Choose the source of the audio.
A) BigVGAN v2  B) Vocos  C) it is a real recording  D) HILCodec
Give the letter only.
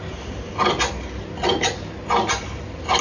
C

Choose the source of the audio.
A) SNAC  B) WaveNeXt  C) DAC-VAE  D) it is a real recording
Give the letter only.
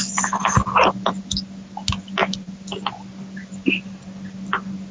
D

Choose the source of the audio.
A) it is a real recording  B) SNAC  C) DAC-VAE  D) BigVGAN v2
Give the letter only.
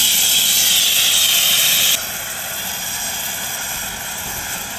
A